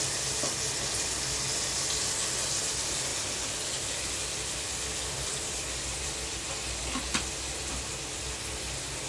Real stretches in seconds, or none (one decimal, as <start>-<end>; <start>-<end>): 0.0-3.1; 6.5-9.1